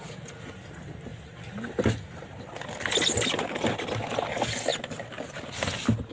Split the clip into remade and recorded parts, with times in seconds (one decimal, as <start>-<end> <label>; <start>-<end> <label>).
0.0-6.1 recorded